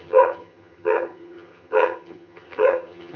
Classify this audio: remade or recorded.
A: remade